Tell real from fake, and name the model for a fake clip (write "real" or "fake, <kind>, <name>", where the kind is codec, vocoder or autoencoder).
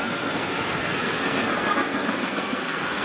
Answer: fake, codec, SNAC